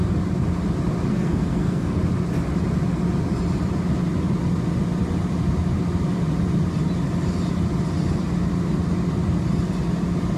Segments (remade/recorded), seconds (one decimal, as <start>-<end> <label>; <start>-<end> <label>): 0.0-1.1 recorded; 1.1-2.0 remade; 2.0-10.4 recorded